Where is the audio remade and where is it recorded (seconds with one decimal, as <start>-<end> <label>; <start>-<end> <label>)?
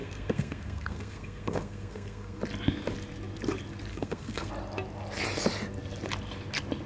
0.0-2.4 remade; 2.4-3.9 recorded; 3.9-4.5 remade; 4.5-6.9 recorded